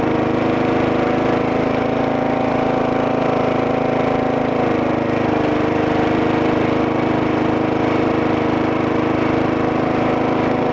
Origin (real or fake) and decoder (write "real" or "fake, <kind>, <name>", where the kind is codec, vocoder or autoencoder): real